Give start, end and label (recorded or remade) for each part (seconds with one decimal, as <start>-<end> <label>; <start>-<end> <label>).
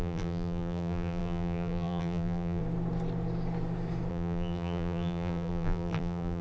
0.0-2.6 remade; 2.6-4.1 recorded; 4.1-6.4 remade